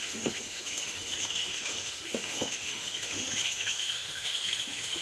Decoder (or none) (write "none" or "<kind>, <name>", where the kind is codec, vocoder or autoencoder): autoencoder, DAC-VAE